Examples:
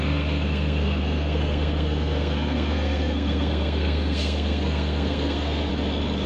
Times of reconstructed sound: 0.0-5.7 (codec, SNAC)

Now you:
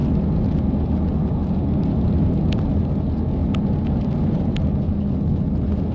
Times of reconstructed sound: none

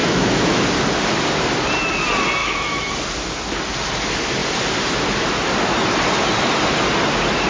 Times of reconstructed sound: 0.0-0.6 (autoencoder, DAC-VAE); 2.4-2.9

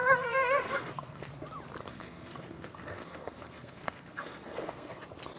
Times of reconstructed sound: 0.0-1.3 (codec, SNAC); 1.8-5.0

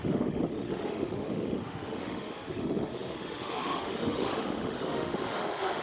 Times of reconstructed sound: 0.0-5.8 (autoencoder, DAC-VAE)

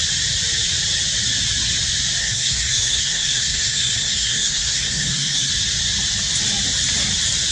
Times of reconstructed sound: 2.2-5.5 (codec, SNAC)